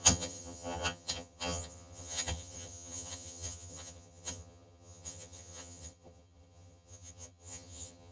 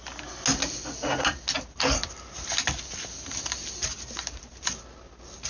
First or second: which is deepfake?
first